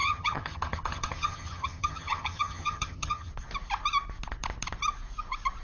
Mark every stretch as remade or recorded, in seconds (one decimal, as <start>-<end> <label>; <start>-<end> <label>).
0.0-3.3 remade; 3.3-5.6 recorded